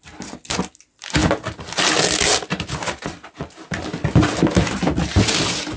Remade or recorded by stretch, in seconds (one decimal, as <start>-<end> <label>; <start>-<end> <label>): 0.0-5.8 recorded

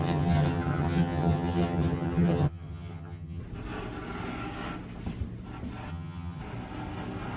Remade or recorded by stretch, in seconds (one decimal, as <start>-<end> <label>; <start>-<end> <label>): 0.0-3.4 remade; 3.4-5.9 recorded; 5.9-6.4 remade; 6.4-7.4 recorded

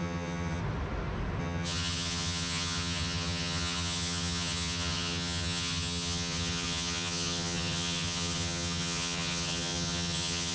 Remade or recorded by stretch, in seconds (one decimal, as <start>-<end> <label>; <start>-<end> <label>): 0.0-0.6 remade; 0.6-1.4 recorded; 1.4-10.5 remade

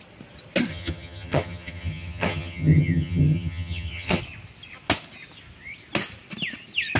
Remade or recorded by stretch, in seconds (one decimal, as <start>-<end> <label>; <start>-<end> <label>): 0.0-0.7 recorded; 0.7-4.2 remade; 4.2-7.0 recorded